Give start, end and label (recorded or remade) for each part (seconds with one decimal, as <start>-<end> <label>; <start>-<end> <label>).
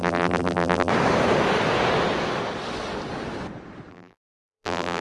0.0-0.9 remade; 0.9-3.9 recorded; 3.9-5.0 remade